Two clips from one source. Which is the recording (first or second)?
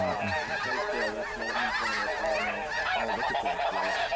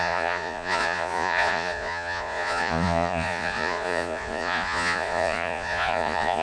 first